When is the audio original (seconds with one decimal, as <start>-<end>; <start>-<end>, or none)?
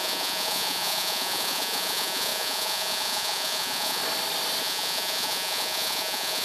4.0-4.6